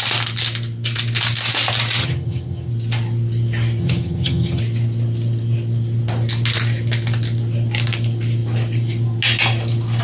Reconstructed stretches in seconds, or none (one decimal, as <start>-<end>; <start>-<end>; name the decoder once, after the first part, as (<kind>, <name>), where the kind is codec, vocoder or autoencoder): 2.0-2.7 (vocoder, HiFi-GAN); 3.8-4.6